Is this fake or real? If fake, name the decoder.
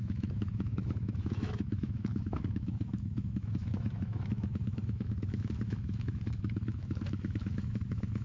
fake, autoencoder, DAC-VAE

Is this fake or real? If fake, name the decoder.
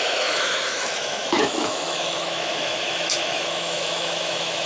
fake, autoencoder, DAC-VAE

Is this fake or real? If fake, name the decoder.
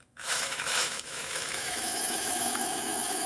fake, autoencoder, DAC-VAE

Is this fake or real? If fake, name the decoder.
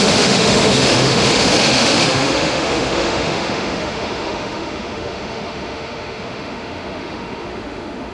fake, autoencoder, DAC-VAE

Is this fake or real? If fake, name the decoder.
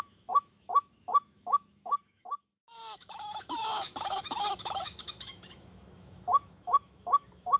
fake, autoencoder, DAC-VAE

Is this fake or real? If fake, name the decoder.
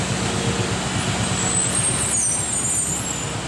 real